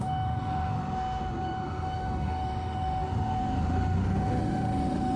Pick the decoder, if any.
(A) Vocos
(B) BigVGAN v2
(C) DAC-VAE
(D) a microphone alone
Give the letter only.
C